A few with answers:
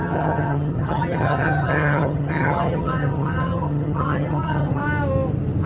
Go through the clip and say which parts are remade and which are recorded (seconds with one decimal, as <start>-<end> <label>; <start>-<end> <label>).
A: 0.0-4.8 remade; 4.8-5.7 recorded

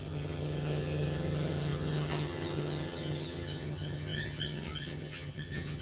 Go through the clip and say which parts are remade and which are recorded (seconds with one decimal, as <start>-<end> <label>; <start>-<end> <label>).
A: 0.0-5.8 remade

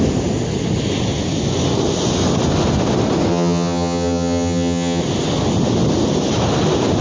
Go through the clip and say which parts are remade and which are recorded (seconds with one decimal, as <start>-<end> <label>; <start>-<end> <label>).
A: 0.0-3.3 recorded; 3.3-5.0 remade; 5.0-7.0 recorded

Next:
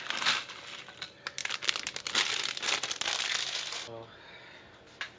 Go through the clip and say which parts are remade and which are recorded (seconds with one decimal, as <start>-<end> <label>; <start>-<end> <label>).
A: 0.0-5.2 recorded

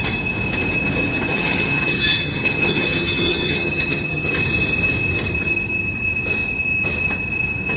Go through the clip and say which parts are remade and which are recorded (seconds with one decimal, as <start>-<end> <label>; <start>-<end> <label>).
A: 0.0-1.3 recorded; 1.3-4.3 remade; 4.3-7.8 recorded